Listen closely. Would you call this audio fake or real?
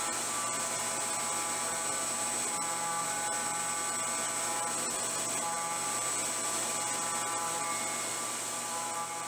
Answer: real